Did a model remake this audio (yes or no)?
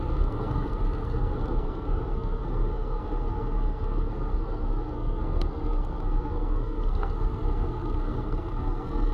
yes